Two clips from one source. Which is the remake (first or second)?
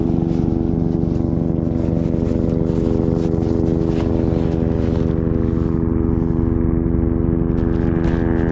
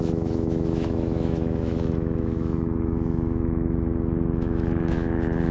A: second